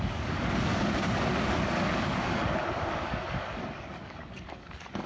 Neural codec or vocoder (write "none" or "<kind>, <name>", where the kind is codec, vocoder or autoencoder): codec, DAC